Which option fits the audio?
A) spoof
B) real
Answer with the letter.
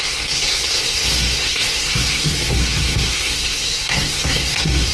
A